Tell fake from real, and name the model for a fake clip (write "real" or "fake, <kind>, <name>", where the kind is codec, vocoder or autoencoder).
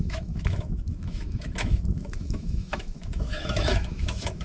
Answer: fake, autoencoder, DAC-VAE